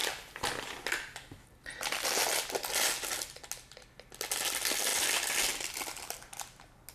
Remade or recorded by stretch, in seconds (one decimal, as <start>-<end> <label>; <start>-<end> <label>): 0.0-6.9 recorded